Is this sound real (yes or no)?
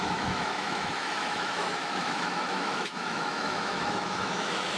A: no